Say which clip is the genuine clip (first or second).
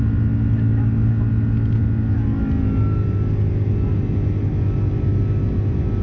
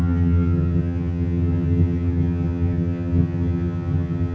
first